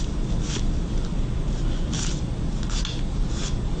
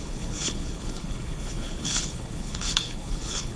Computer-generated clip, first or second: second